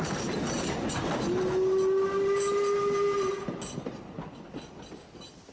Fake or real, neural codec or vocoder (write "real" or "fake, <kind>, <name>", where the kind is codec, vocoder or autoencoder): real